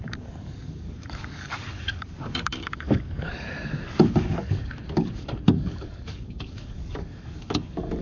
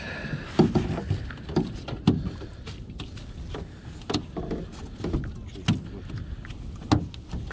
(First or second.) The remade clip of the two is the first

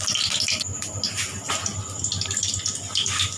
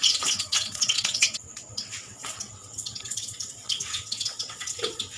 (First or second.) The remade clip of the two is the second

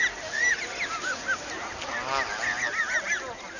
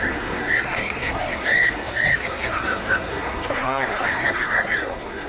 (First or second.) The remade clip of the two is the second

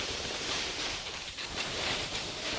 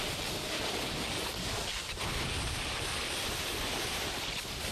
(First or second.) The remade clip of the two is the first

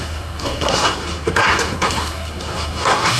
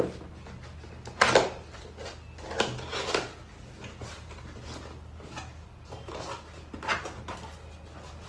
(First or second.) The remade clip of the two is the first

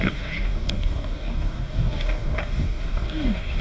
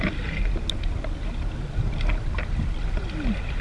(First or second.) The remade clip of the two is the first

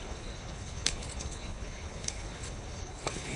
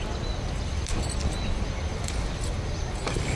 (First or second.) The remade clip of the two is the first